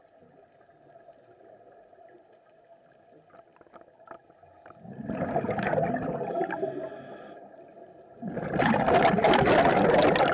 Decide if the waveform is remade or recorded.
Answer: recorded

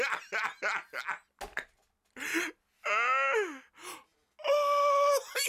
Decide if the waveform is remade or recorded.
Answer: recorded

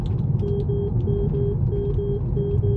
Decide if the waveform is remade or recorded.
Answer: recorded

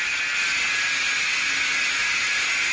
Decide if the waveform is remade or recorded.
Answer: recorded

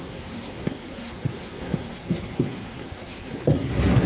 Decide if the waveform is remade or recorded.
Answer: remade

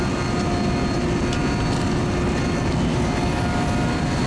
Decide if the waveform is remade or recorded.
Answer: recorded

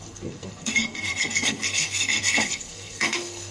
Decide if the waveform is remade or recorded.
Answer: remade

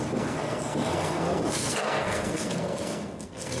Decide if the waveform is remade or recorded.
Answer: remade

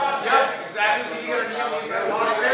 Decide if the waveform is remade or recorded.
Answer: recorded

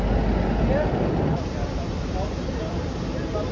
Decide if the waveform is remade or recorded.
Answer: recorded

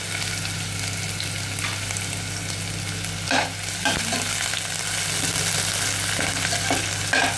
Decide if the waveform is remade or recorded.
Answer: recorded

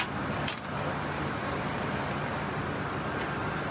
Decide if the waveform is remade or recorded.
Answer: recorded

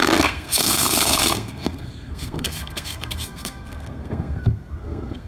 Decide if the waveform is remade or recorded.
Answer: remade